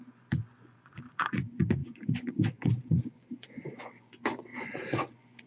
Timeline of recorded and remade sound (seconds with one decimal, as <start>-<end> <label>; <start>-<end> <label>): 0.0-5.5 remade